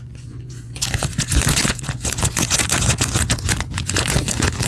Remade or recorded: remade